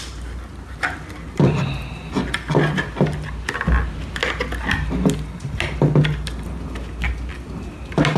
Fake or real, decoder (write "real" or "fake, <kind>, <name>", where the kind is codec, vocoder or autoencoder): real